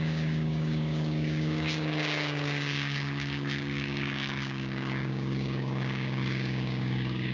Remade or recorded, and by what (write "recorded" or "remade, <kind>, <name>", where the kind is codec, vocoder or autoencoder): remade, codec, DAC